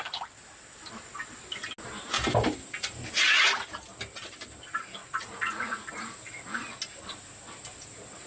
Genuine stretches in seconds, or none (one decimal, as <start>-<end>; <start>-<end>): 0.0-5.0; 5.9-8.3